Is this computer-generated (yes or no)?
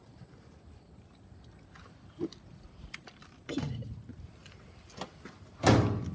no